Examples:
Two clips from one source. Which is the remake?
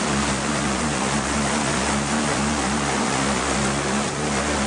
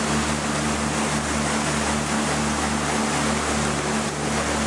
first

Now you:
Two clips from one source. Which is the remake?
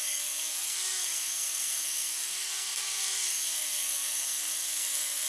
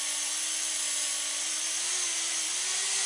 first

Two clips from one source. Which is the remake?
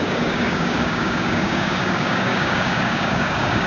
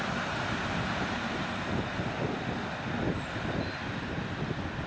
first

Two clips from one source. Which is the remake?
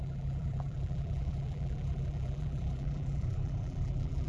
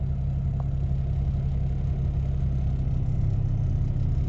first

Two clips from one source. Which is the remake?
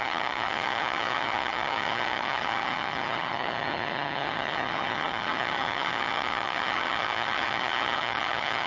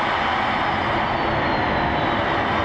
first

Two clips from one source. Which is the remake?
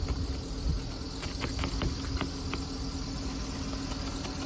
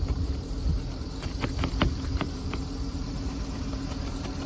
second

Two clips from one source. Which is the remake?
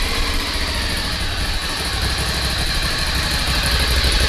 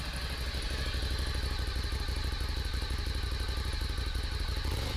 first